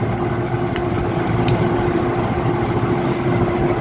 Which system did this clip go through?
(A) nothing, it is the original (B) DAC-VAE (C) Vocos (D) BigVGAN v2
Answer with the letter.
A